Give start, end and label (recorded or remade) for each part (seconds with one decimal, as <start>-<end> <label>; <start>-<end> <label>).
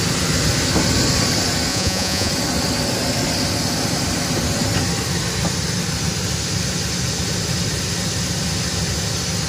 0.0-1.7 recorded; 1.7-2.3 remade; 2.3-9.5 recorded